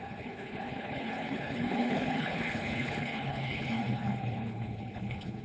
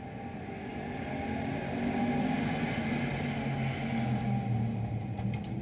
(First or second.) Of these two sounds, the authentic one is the second